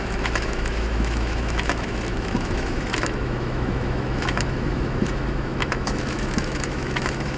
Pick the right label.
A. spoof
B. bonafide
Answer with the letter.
A